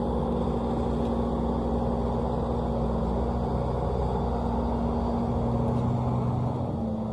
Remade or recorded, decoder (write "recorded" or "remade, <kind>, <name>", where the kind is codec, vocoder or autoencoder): recorded